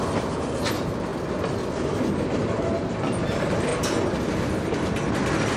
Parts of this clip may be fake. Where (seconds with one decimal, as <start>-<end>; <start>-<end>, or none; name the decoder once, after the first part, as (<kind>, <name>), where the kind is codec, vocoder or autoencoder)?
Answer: 0.0-1.1 (vocoder, BigVGAN v2); 3.2-3.7; 5.1-5.6